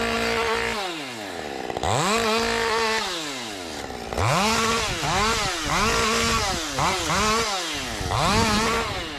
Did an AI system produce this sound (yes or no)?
no